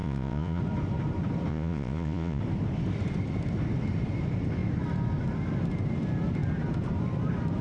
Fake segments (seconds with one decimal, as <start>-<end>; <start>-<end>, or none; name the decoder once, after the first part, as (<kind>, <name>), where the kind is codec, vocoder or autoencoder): 0.0-0.6 (vocoder, Vocos); 1.5-2.4